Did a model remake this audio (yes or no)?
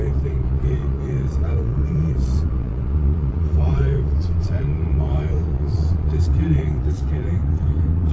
yes